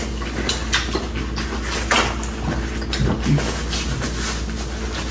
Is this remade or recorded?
recorded